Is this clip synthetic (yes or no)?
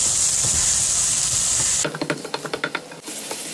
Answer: no